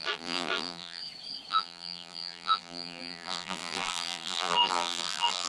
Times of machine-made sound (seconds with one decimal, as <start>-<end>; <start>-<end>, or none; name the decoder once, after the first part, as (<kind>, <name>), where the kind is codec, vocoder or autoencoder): 0.0-1.0 (vocoder, BigVGAN v2); 1.5-5.5